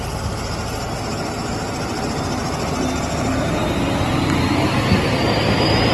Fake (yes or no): no